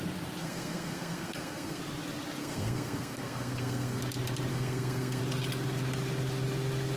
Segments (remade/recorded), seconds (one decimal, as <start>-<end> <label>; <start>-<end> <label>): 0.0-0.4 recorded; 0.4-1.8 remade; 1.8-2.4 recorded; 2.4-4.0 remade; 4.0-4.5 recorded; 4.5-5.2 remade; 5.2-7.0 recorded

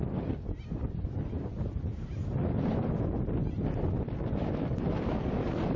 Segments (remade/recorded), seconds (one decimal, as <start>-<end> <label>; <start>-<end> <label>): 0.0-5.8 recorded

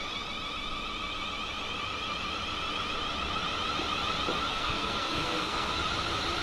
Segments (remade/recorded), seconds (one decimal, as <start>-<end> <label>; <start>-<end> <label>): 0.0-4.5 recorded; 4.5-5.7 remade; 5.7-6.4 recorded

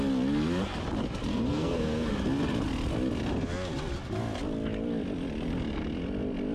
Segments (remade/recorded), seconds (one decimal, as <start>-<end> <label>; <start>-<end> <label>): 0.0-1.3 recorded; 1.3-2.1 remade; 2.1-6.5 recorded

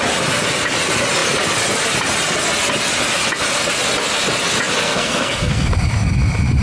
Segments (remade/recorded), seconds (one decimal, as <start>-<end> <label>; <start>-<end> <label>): 0.0-4.8 recorded; 4.8-5.7 remade; 5.7-6.6 recorded

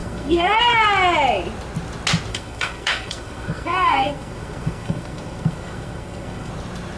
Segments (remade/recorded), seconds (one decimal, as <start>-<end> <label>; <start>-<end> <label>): 0.0-0.6 remade; 0.6-2.3 recorded; 2.3-6.5 remade; 6.5-7.0 recorded